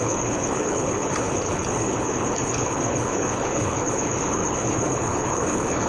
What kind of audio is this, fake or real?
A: fake